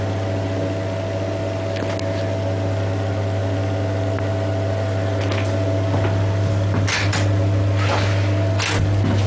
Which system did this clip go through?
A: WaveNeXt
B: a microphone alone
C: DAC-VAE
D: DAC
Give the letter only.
B